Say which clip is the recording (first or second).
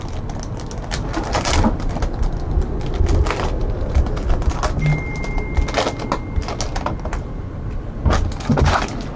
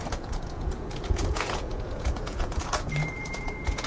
first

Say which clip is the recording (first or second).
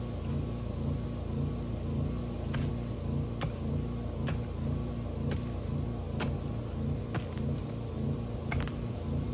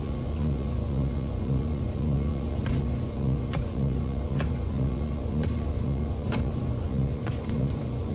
first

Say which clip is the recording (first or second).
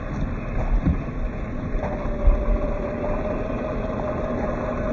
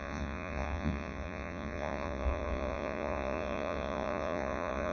first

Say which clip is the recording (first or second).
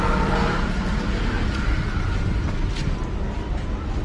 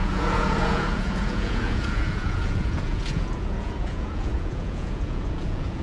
first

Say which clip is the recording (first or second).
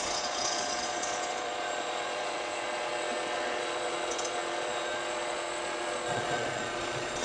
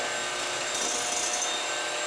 second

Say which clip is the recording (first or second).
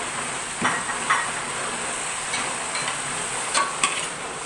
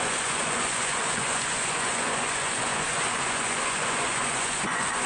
first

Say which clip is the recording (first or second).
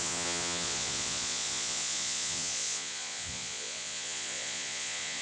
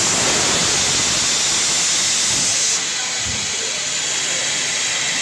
second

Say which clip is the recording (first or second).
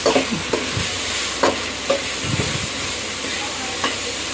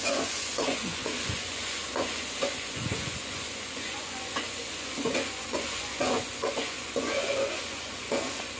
first